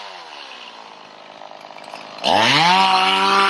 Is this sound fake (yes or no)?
no